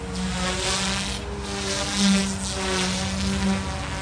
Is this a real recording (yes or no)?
yes